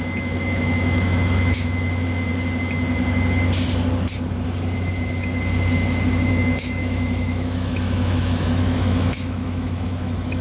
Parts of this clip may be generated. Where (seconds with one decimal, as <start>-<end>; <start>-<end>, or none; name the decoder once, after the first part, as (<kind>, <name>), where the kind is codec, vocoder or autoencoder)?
0.0-2.3 (autoencoder, DAC-VAE); 6.3-10.4